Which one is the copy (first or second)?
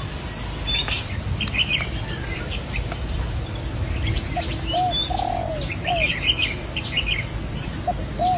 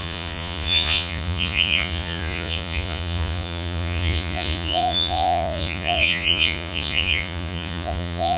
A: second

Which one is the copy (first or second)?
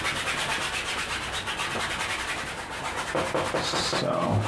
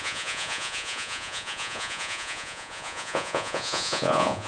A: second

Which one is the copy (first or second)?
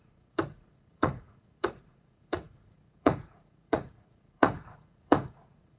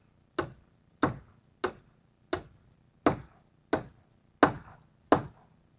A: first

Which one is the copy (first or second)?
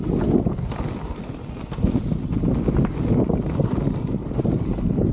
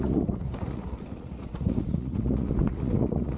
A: second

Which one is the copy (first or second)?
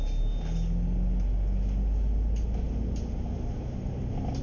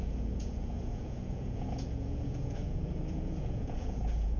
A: second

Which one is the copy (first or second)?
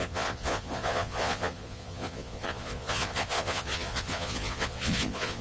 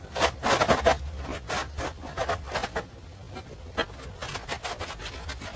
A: first